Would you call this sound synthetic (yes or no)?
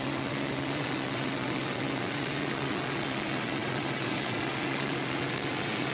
yes